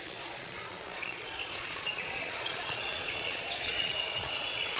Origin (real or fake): fake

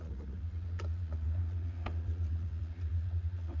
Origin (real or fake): fake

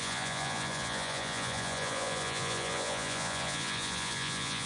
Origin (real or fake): fake